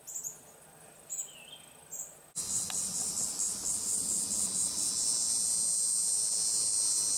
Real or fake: real